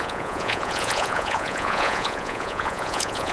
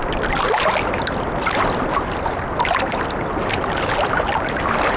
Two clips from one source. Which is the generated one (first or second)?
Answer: first